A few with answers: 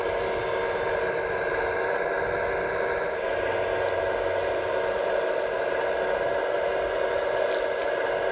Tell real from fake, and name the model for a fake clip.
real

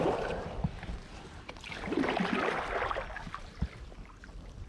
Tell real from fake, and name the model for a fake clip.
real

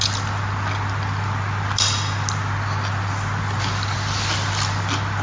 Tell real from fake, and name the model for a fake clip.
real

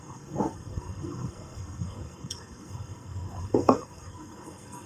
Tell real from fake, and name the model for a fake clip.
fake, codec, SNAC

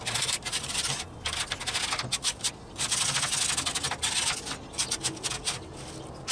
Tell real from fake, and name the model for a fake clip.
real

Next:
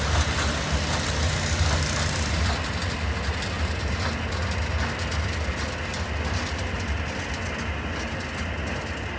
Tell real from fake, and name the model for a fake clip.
real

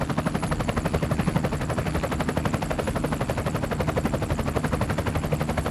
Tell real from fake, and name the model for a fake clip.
real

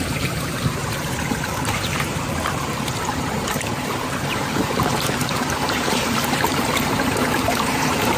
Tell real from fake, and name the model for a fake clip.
fake, vocoder, BigVGAN v2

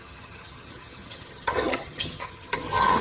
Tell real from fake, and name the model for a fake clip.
fake, vocoder, HiFi-GAN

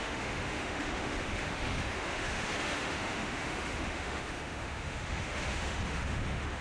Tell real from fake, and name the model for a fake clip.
fake, autoencoder, DAC-VAE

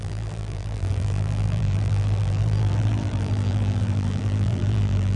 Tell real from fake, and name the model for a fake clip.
fake, vocoder, BigVGAN v2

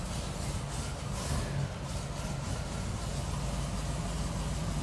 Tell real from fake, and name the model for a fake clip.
real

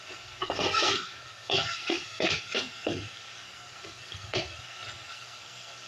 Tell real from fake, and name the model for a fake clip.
fake, codec, SNAC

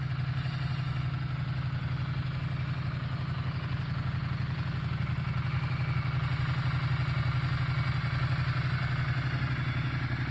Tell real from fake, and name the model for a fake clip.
real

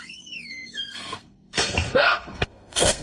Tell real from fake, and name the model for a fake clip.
fake, codec, SNAC